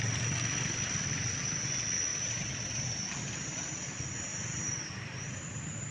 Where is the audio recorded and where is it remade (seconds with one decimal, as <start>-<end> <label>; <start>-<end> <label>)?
0.0-2.1 recorded; 2.1-3.1 remade; 3.1-4.3 recorded; 4.3-5.4 remade; 5.4-5.9 recorded